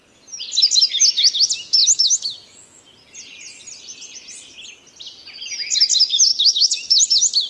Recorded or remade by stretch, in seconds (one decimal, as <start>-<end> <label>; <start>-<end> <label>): 0.0-1.8 recorded; 1.8-2.8 remade; 2.8-6.3 recorded; 6.3-7.0 remade; 7.0-7.5 recorded

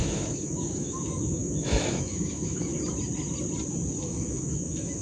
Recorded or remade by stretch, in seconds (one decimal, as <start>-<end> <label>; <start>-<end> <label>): 0.0-2.7 remade; 2.7-4.0 recorded; 4.0-5.0 remade

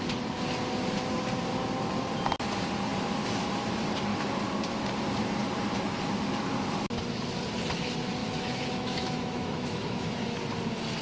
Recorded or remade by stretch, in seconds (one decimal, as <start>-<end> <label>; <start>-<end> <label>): 0.0-8.2 recorded; 8.2-10.4 remade; 10.4-11.0 recorded

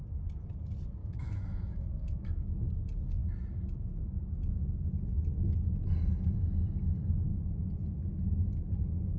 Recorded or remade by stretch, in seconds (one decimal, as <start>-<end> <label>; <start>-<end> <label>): 0.0-1.0 recorded; 1.0-2.7 remade; 2.7-9.2 recorded

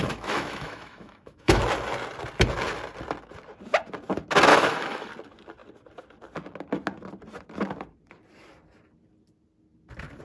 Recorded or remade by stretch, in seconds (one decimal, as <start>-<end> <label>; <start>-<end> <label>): 0.0-1.6 remade; 1.6-4.5 recorded; 4.5-5.1 remade; 5.1-10.2 recorded